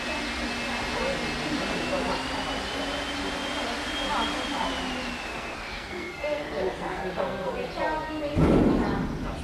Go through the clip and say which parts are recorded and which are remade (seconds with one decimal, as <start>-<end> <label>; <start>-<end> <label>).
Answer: 0.0-5.3 recorded; 5.3-7.5 remade; 7.5-9.4 recorded